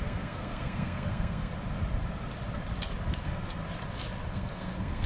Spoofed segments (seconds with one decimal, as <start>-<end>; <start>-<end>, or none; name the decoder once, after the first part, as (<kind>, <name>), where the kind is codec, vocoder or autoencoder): 0.0-1.5 (codec, SNAC); 3.2-3.6; 4.3-5.1